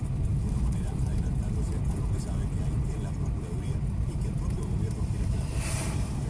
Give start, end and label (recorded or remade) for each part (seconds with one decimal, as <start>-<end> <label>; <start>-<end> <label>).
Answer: 0.0-1.7 remade; 1.7-4.1 recorded; 4.1-6.3 remade